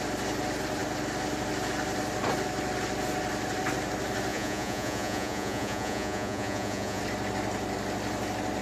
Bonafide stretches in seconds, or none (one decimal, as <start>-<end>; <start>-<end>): 0.0-4.3; 7.0-8.6